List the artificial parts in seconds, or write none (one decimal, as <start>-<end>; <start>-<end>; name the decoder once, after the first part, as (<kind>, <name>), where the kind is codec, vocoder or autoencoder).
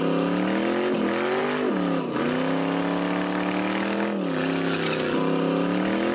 none